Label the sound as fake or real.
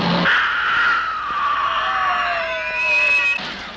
real